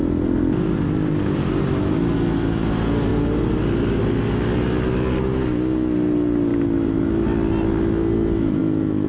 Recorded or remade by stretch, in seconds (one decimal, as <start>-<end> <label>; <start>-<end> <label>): 0.0-9.1 recorded